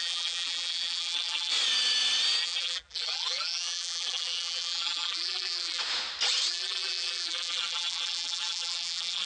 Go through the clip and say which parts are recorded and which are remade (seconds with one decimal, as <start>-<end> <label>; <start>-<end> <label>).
0.0-1.5 remade; 1.5-2.4 recorded; 2.4-5.8 remade; 5.8-6.5 recorded; 6.5-9.3 remade

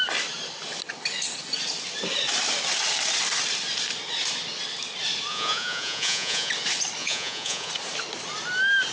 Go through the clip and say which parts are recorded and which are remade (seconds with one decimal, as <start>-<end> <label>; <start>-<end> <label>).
0.0-5.3 recorded; 5.3-6.5 remade; 6.5-7.0 recorded; 7.0-7.7 remade; 7.7-8.9 recorded